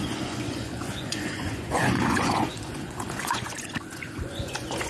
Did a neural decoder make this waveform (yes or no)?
yes